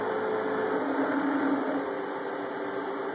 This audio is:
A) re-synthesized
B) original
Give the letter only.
B